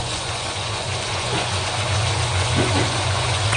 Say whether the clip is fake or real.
fake